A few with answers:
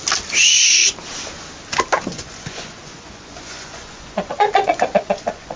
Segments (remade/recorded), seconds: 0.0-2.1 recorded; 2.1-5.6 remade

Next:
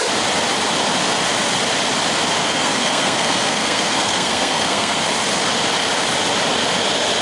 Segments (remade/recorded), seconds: 0.0-2.4 recorded; 2.4-5.0 remade; 5.0-7.2 recorded

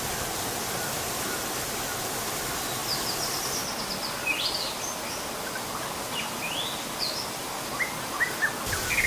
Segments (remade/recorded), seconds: 0.0-9.1 recorded

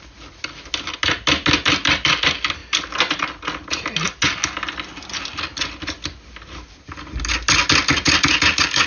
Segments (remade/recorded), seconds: 0.0-8.9 recorded

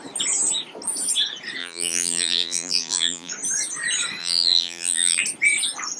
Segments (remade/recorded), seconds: 0.0-1.6 recorded; 1.6-3.3 remade; 3.3-4.2 recorded; 4.2-5.2 remade; 5.2-6.0 recorded

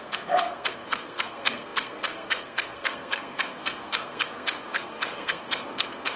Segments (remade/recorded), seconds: 0.0-6.2 remade